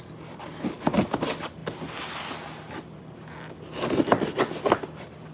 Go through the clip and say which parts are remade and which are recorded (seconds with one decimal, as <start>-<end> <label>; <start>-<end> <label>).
0.0-5.3 recorded